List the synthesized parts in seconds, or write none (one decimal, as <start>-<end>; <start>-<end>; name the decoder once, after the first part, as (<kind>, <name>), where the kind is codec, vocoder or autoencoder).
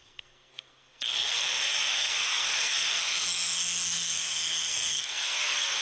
0.0-5.8 (codec, SNAC)